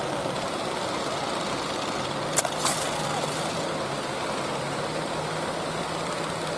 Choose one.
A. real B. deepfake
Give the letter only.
B